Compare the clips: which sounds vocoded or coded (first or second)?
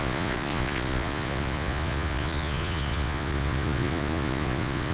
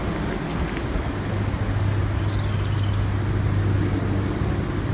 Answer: first